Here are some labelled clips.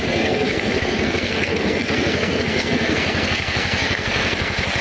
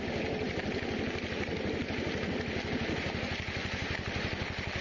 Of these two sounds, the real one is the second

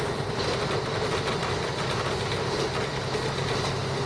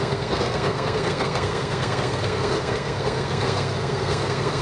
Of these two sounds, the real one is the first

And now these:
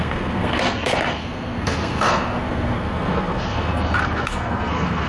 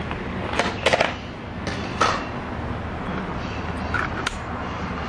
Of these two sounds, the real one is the second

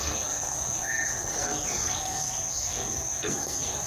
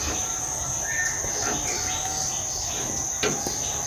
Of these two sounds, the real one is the second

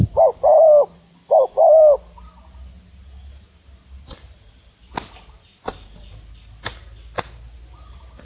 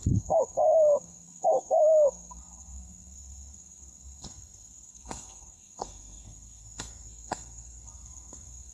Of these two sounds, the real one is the first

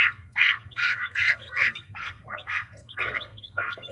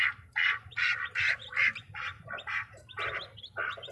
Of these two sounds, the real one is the second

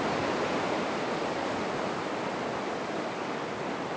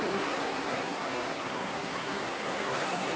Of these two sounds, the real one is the first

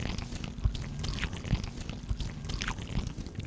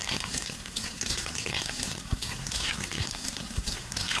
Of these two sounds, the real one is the first